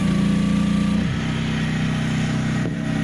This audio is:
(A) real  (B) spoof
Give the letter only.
A